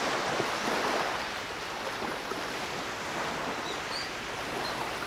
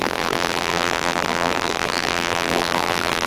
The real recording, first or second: first